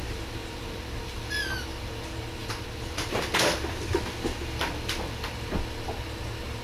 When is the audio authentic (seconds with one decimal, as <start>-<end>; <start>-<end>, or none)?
0.0-6.6